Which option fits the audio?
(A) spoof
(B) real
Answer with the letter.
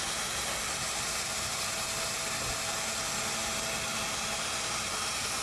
B